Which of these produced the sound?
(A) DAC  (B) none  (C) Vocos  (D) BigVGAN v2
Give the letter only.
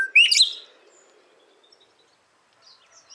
B